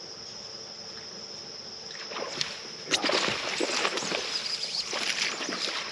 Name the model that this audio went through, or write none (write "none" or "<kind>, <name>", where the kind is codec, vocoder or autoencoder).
none